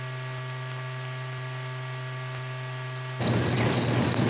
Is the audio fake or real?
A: real